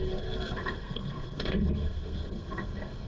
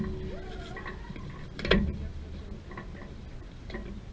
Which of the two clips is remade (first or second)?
first